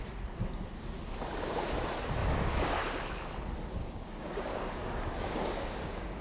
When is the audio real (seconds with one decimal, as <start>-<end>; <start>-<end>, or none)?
0.0-2.2; 2.8-3.8